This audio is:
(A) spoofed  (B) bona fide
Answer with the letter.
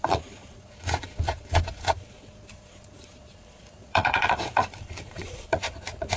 A